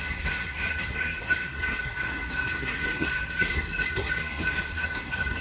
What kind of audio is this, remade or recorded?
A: remade